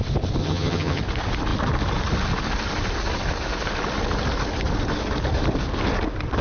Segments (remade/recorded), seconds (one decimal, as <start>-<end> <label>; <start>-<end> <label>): 0.0-0.4 recorded; 0.4-1.0 remade; 1.0-6.4 recorded